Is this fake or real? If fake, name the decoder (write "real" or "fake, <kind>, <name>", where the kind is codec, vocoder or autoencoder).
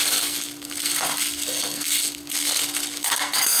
fake, codec, SNAC